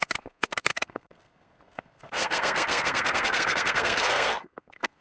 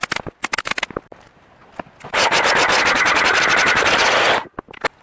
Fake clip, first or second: first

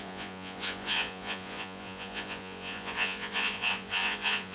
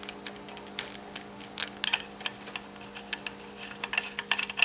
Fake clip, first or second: first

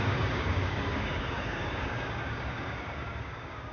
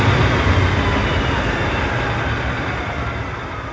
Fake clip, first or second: first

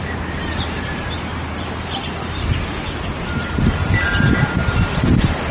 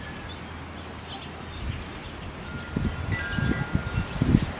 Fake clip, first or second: first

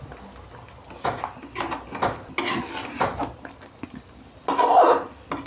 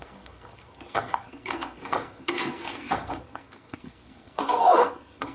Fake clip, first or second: second